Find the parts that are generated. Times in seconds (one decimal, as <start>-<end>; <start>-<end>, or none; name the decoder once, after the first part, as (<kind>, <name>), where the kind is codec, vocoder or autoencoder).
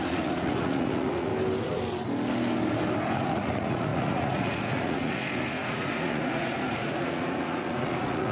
0.0-1.3 (vocoder, Vocos); 3.2-8.3